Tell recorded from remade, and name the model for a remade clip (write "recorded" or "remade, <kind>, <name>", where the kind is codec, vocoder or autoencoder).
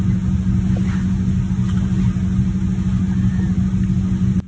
recorded